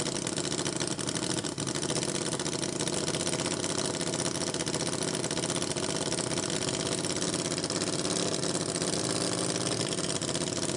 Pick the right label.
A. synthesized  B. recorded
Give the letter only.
B